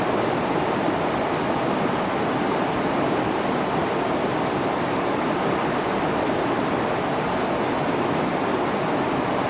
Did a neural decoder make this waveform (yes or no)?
no